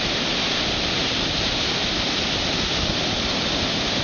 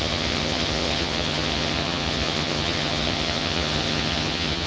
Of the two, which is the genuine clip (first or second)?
first